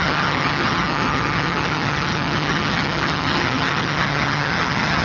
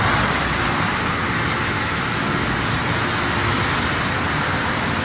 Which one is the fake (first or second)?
first